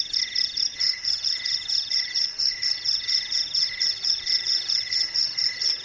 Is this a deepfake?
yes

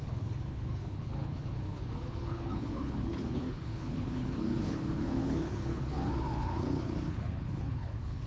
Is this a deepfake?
yes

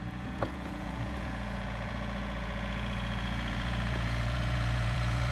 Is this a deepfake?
yes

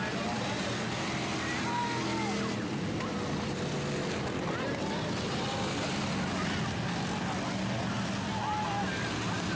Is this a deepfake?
no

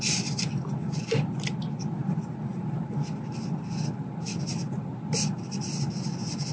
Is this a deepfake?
no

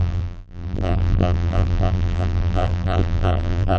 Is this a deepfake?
yes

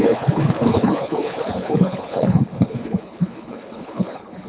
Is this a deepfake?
yes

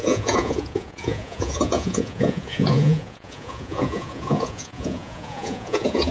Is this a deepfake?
yes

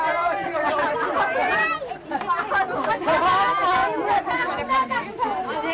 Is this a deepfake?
no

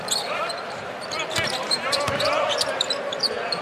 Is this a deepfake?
no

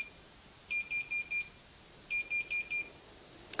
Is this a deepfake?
no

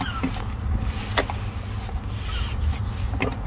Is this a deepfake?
no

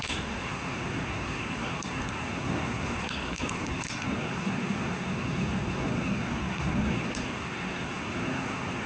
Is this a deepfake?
yes